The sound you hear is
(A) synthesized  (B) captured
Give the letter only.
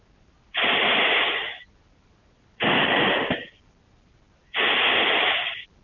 B